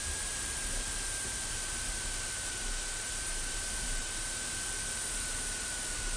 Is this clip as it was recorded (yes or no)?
no